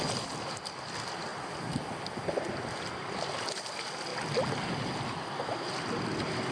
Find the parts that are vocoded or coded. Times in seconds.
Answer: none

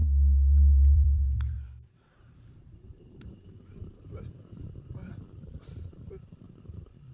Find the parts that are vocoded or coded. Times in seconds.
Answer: 0.0-4.0

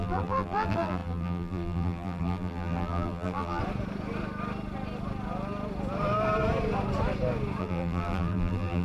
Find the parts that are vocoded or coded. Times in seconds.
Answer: 0.0-3.6; 7.6-8.8

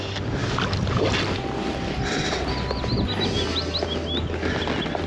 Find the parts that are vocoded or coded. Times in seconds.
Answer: none

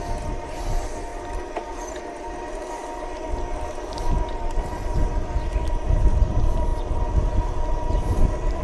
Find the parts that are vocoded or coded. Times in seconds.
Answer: none

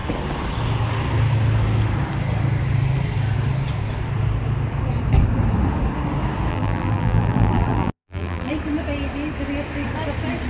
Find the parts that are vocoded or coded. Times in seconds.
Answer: 6.5-8.5

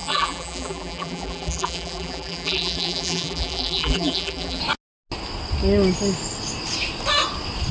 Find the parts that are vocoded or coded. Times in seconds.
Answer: 0.0-4.6

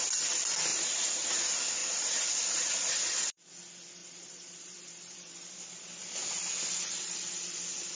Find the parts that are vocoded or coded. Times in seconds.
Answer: 0.7-1.3; 1.8-3.5; 4.0-5.9